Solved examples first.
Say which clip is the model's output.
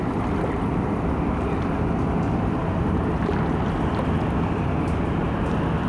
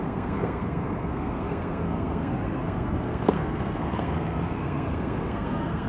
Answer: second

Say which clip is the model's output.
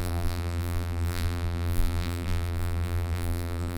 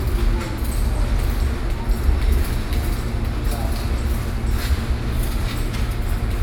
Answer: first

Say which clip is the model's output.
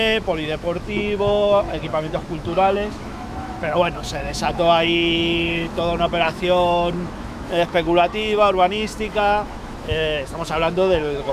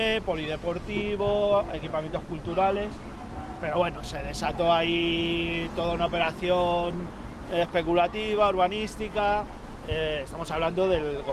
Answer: first